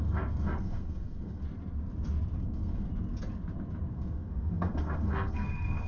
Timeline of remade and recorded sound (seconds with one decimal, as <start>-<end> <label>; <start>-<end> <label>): 0.0-1.4 remade; 1.4-2.4 recorded; 2.4-2.9 remade; 2.9-3.9 recorded; 3.9-5.9 remade